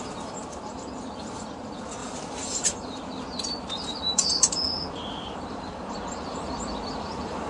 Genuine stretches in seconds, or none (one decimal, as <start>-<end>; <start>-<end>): 0.0-2.0; 3.0-3.9